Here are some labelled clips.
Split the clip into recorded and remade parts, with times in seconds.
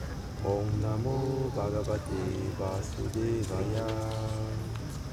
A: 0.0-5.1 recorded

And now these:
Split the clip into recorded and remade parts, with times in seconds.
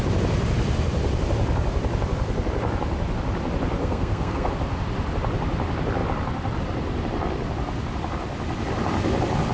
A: 0.0-3.8 recorded; 3.8-4.5 remade; 4.5-9.5 recorded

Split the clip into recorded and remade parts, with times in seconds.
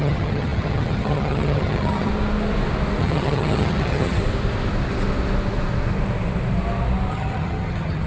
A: 0.0-2.1 remade; 2.1-3.0 recorded; 3.0-4.2 remade; 4.2-7.1 recorded; 7.1-8.1 remade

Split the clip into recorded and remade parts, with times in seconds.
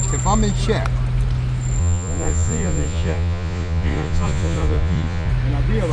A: 0.0-1.8 recorded; 1.8-5.3 remade; 5.3-5.9 recorded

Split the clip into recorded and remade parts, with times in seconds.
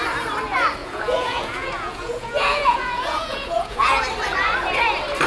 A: 0.0-0.8 recorded; 0.8-4.0 remade; 4.0-5.3 recorded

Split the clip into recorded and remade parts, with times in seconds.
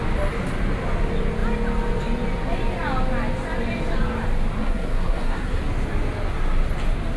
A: 0.0-4.6 recorded; 4.6-5.6 remade; 5.6-7.2 recorded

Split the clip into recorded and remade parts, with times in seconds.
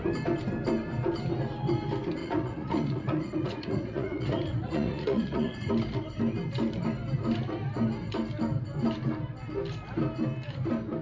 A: 0.0-2.2 recorded; 2.2-5.7 remade; 5.7-11.0 recorded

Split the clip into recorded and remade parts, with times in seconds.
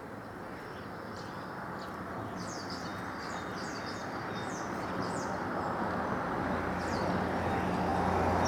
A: 0.0-8.5 recorded